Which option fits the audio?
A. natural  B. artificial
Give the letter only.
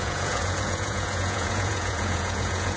B